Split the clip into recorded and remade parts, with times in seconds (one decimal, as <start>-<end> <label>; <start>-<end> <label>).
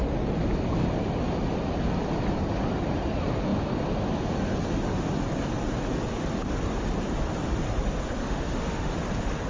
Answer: 0.0-8.2 recorded; 8.2-8.9 remade; 8.9-9.5 recorded